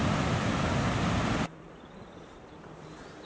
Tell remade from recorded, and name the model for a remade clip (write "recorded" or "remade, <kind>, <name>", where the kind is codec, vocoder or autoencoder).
remade, vocoder, BigVGAN v2